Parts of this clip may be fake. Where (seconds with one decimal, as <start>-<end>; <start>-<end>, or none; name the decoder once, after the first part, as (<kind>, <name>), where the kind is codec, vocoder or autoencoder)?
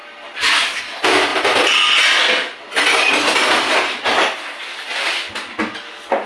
0.0-0.8 (vocoder, BigVGAN v2); 1.3-1.9